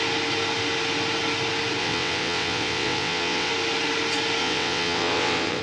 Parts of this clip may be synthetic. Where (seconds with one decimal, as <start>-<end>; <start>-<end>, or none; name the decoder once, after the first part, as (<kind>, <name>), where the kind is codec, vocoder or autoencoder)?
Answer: 1.8-3.5 (vocoder, WaveNeXt); 4.4-5.6